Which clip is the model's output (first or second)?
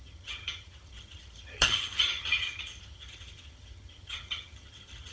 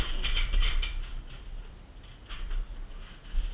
first